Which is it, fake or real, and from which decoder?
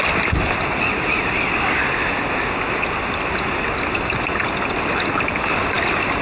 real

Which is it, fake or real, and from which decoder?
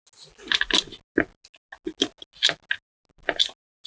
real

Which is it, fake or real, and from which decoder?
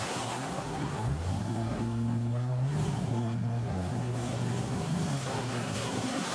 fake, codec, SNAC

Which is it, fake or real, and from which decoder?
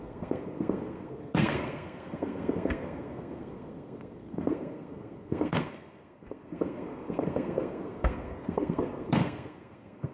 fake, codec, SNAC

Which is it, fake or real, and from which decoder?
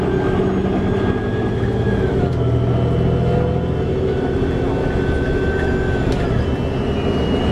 real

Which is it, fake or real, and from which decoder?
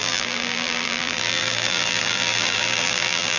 fake, vocoder, BigVGAN v2